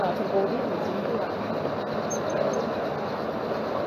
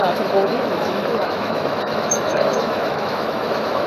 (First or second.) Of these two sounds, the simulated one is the second